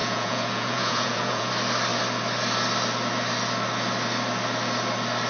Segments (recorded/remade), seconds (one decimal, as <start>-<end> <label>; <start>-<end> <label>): 0.0-1.5 remade; 1.5-5.3 recorded